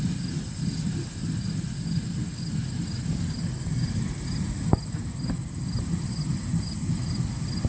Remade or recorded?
recorded